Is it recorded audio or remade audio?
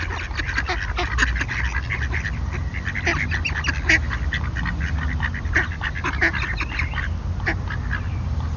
recorded